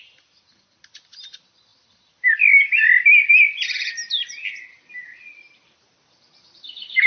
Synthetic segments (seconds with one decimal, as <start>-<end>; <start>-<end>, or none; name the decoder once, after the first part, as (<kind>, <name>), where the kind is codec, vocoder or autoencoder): none